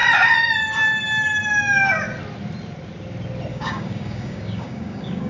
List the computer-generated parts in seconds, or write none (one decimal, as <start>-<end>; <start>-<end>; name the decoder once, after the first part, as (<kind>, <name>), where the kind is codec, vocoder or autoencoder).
3.5-5.3 (codec, DAC)